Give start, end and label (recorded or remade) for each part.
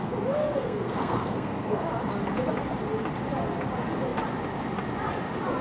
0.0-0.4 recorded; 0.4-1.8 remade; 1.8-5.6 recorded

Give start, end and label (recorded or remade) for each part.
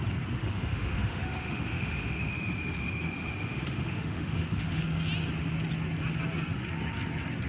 0.0-0.4 recorded; 0.4-4.8 remade; 4.8-7.5 recorded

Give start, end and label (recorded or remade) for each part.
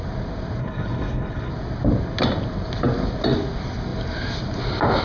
0.0-0.6 recorded; 0.6-1.5 remade; 1.5-5.0 recorded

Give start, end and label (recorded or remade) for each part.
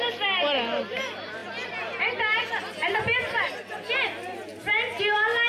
0.0-5.5 recorded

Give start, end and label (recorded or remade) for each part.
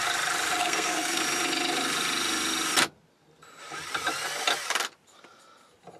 0.0-0.6 recorded; 0.6-1.2 remade; 1.2-6.0 recorded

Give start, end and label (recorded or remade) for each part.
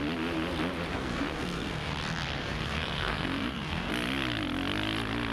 0.0-0.9 recorded; 0.9-1.9 remade; 1.9-2.4 recorded; 2.4-3.9 remade; 3.9-5.3 recorded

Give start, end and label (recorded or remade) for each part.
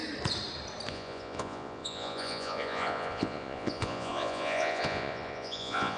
0.0-0.9 recorded; 0.9-6.0 remade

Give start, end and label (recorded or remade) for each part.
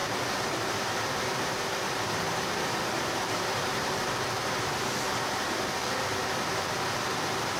0.0-4.6 remade; 4.6-7.6 recorded